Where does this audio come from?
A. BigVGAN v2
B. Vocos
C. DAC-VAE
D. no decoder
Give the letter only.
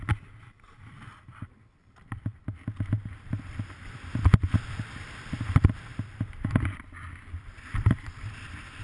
A